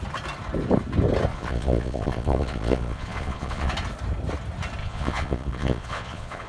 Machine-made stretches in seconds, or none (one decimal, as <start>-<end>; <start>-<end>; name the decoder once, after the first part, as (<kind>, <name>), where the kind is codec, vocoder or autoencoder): 1.3-3.7 (vocoder, Vocos); 4.8-6.5

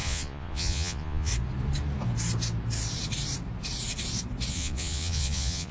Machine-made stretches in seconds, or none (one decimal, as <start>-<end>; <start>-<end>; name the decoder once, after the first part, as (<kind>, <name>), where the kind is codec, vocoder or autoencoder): 0.0-1.3 (vocoder, Vocos); 4.5-5.7

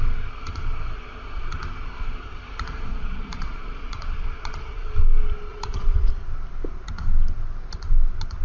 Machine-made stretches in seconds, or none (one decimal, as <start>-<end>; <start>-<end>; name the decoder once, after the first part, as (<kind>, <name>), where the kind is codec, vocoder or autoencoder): 2.9-4.9 (vocoder, Vocos); 5.5-6.1

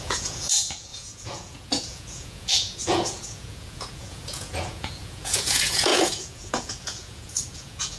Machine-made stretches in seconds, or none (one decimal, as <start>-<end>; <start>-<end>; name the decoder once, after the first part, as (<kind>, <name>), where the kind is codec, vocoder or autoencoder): 0.0-8.0 (vocoder, Vocos)

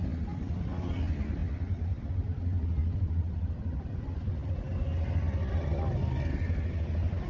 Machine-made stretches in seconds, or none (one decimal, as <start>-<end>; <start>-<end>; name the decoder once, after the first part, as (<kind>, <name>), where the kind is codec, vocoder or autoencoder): none

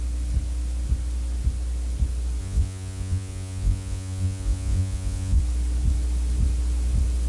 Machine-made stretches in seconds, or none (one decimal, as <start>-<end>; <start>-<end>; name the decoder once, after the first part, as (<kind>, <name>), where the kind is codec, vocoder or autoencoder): 2.4-5.4 (vocoder, Vocos)

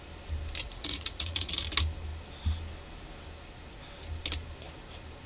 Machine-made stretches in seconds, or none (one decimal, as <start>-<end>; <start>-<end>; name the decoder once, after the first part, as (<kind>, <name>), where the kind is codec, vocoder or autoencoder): 0.6-1.6 (vocoder, Vocos)